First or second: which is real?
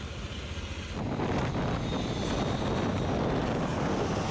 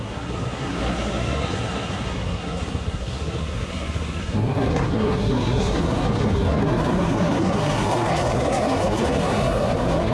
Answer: first